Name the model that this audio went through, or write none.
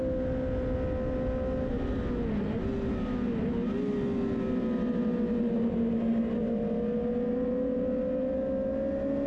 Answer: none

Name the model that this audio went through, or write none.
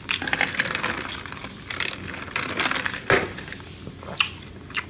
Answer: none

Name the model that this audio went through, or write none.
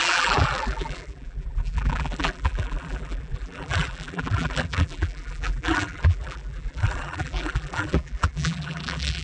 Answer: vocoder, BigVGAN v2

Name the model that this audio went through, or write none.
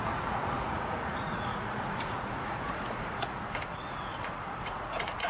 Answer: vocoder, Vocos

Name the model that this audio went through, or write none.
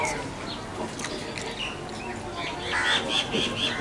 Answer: none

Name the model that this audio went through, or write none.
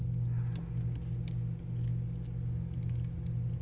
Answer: none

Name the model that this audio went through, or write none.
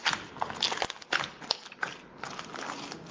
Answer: none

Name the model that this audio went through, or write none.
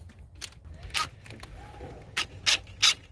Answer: none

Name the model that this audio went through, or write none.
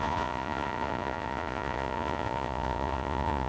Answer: vocoder, Vocos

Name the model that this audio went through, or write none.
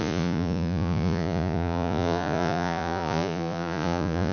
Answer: vocoder, Vocos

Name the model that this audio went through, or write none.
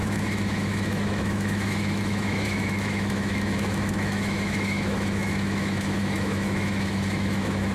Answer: autoencoder, DAC-VAE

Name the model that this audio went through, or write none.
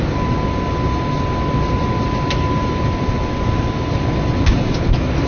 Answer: none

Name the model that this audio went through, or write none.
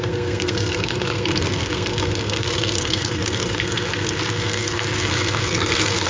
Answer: codec, SNAC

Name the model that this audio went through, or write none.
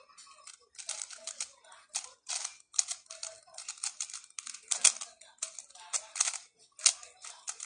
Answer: none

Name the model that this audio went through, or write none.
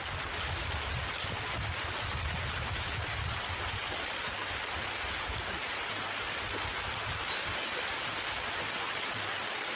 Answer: vocoder, BigVGAN v2